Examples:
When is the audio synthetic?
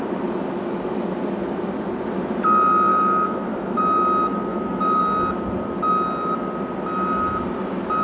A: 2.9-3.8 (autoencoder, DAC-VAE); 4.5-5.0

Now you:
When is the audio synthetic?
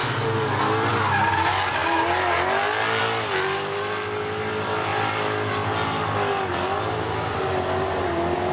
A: none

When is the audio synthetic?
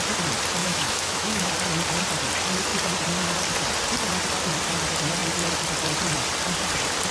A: 0.6-1.5 (autoencoder, DAC-VAE)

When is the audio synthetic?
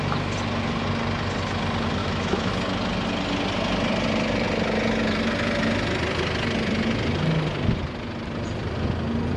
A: 2.0-2.5 (autoencoder, DAC-VAE)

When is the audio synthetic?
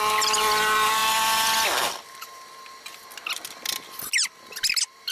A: none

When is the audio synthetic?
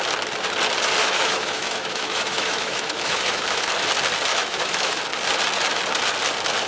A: 1.0-3.6 (autoencoder, DAC-VAE); 4.3-5.0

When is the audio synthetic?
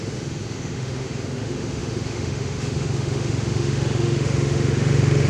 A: 0.0-5.3 (autoencoder, DAC-VAE)